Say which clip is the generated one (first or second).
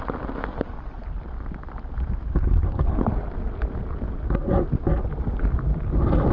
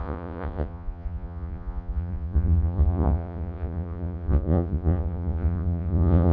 second